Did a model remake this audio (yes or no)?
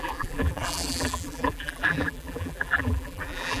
yes